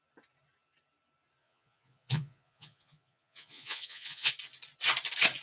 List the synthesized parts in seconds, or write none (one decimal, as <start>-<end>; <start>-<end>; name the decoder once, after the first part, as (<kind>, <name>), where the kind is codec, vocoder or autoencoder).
1.4-4.3 (vocoder, Vocos)